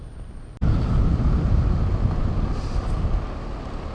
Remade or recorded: recorded